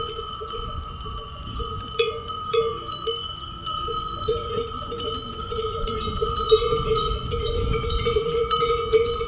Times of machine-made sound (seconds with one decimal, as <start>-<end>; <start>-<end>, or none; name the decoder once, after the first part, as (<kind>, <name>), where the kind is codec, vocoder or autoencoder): 0.0-9.3 (vocoder, Vocos)